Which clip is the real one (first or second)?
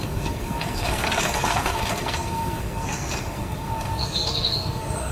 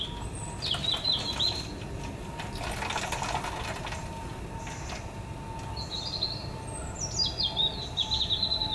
second